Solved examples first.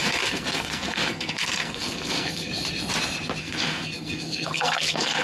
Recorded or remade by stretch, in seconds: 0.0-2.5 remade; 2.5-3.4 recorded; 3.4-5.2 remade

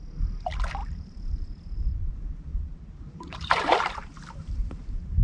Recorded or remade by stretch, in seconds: 0.0-0.8 recorded; 0.8-2.1 remade; 2.1-2.5 recorded; 2.5-4.3 remade; 4.3-5.2 recorded

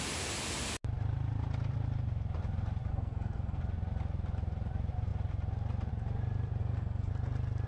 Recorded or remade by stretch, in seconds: 0.0-2.9 recorded; 2.9-3.6 remade; 3.6-6.6 recorded; 6.6-7.1 remade; 7.1-7.7 recorded

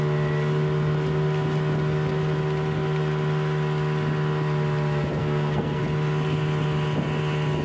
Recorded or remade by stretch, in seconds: 0.0-5.2 recorded; 5.2-5.8 remade; 5.8-7.6 recorded

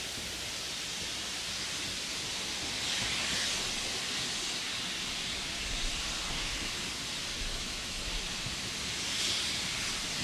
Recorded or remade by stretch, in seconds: 0.0-7.5 recorded; 7.5-8.0 remade; 8.0-10.2 recorded